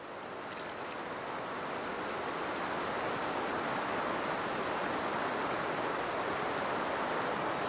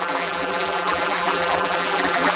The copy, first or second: second